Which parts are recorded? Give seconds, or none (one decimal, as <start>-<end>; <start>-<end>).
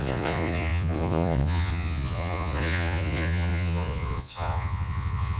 none